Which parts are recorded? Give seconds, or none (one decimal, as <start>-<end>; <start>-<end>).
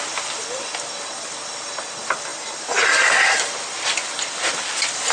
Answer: 0.0-5.1